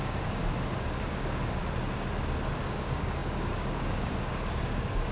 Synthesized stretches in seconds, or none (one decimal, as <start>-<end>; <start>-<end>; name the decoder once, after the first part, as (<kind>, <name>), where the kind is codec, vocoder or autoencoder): 0.0-0.4 (codec, DAC); 1.0-1.6; 2.7-5.1